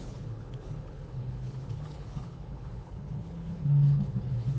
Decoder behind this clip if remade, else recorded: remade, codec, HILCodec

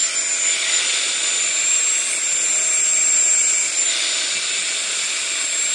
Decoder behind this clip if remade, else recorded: recorded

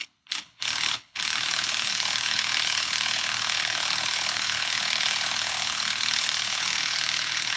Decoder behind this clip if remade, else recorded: remade, codec, HILCodec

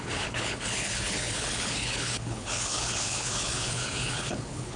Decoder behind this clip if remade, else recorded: remade, codec, HILCodec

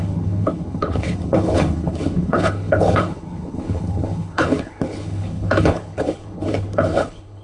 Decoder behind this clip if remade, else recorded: remade, codec, HILCodec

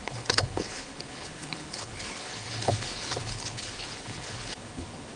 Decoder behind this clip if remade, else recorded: remade, codec, HILCodec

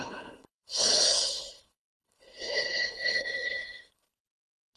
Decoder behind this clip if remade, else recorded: remade, codec, HILCodec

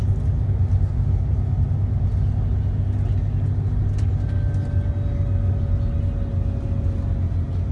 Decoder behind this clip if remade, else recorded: recorded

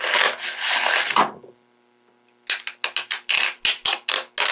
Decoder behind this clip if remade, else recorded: recorded